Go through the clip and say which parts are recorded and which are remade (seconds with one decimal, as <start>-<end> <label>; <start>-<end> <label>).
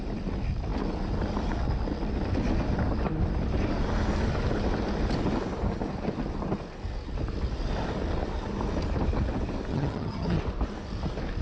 0.0-9.7 recorded; 9.7-10.4 remade; 10.4-11.4 recorded